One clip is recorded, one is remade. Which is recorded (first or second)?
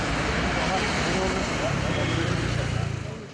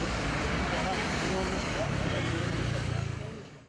first